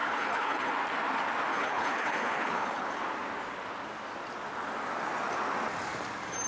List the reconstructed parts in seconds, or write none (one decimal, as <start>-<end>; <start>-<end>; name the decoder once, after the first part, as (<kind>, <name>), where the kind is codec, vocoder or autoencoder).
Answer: 0.0-0.7 (codec, HILCodec); 1.5-3.0

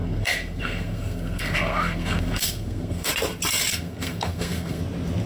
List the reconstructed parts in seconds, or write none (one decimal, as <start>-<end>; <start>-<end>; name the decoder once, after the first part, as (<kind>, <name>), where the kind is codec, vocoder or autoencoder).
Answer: 0.0-3.1 (codec, SNAC); 3.7-4.8

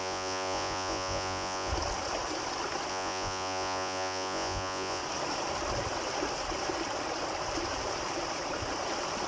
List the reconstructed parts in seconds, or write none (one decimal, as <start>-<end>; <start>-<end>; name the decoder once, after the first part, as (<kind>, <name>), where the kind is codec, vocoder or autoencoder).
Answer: 0.0-1.7 (vocoder, Vocos); 2.9-5.0

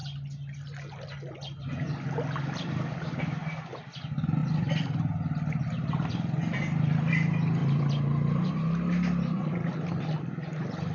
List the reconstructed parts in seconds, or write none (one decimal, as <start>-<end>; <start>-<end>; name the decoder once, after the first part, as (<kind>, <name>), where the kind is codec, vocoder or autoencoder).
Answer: 6.4-7.1 (vocoder, BigVGAN v2); 7.6-8.5

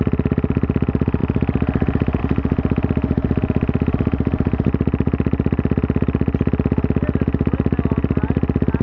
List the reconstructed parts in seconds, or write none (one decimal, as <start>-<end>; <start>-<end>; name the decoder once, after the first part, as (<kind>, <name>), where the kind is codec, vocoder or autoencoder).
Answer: none